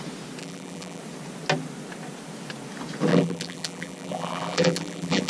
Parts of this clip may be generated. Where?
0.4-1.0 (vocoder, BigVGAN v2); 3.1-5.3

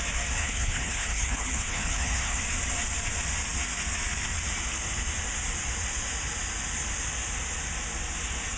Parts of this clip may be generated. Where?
0.4-2.4 (codec, HILCodec)